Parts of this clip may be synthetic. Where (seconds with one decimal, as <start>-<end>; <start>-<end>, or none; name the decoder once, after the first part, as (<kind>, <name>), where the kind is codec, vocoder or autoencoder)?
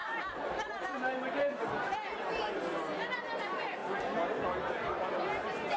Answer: 0.0-2.4 (vocoder, BigVGAN v2)